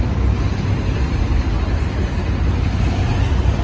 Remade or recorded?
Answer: recorded